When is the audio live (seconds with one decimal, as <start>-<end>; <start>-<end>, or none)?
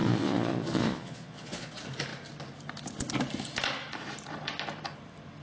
1.7-5.4